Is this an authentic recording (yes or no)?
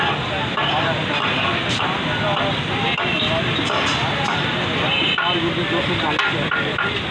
yes